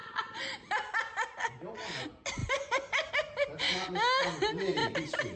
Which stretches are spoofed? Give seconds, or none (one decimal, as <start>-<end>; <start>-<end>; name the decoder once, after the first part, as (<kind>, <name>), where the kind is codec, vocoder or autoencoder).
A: none